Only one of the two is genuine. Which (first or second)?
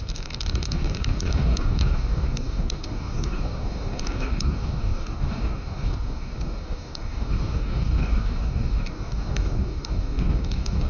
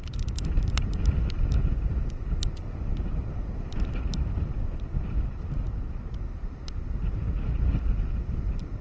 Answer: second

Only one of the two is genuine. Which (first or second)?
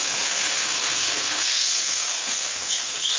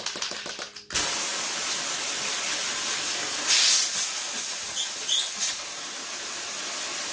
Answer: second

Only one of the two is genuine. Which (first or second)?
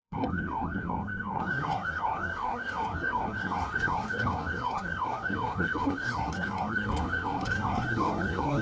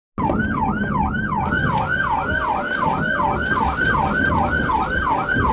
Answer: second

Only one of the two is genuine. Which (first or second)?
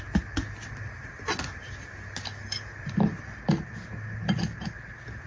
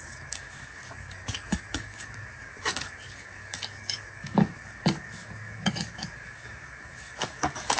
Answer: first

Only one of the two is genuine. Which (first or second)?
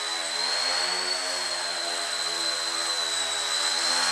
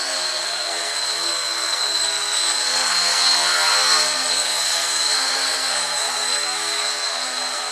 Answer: first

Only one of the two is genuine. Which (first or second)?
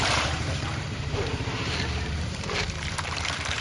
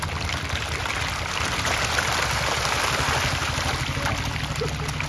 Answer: second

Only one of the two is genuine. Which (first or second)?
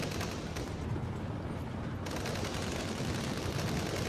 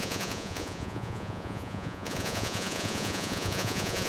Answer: first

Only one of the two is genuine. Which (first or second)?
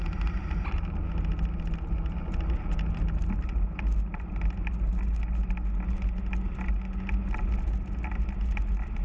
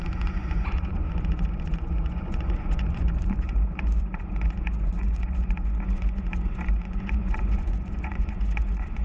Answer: first